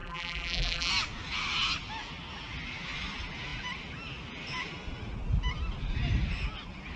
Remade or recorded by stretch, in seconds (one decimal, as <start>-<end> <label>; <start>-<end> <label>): 0.0-0.9 remade; 0.9-7.0 recorded